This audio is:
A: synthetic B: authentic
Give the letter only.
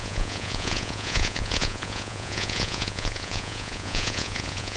A